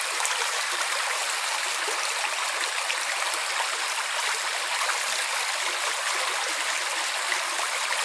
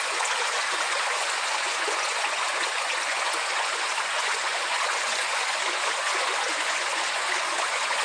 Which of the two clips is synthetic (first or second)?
second